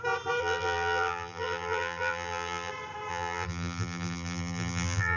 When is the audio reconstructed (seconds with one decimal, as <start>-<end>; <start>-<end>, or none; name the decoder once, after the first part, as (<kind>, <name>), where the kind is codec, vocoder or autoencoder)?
0.4-2.7 (vocoder, BigVGAN v2); 3.1-5.2